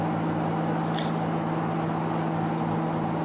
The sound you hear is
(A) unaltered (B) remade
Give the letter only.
A